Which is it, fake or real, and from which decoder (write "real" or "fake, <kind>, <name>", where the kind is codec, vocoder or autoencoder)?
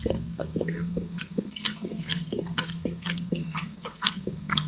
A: fake, codec, SNAC